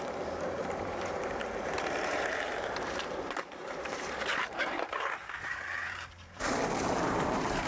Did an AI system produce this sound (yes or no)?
yes